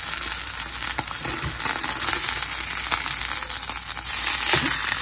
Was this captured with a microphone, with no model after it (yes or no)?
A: yes